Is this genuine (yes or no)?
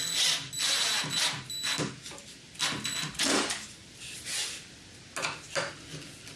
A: yes